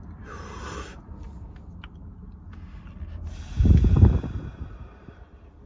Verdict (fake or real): real